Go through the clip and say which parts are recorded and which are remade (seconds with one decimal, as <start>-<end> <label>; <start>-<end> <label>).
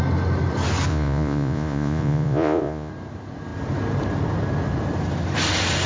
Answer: 0.0-0.9 recorded; 0.9-2.9 remade; 2.9-5.9 recorded